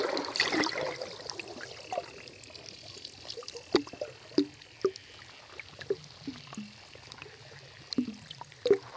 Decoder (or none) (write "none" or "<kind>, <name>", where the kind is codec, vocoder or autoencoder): none